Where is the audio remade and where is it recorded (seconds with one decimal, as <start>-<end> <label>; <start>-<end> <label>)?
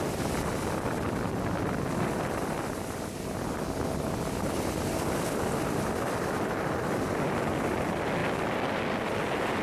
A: 0.0-9.6 recorded